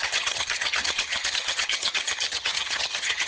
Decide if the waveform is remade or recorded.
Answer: remade